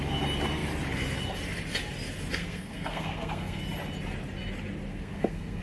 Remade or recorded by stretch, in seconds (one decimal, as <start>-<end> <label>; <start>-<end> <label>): 0.0-2.3 recorded; 2.3-3.6 remade; 3.6-4.9 recorded; 4.9-5.6 remade